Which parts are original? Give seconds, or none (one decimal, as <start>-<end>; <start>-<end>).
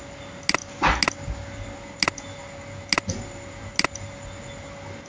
0.0-5.1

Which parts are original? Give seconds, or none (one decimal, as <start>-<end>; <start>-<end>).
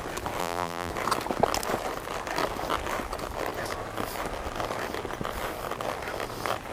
0.0-0.4; 0.9-6.7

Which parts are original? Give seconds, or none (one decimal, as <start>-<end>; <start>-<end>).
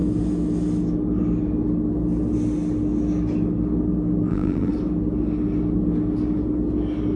0.0-4.3; 4.7-7.2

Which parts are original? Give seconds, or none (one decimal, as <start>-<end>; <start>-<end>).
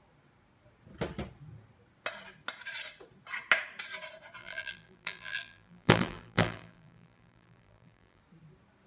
0.0-4.4; 8.2-8.9